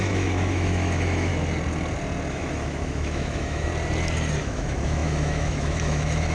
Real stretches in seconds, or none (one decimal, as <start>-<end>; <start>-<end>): 1.3-2.3; 3.7-4.4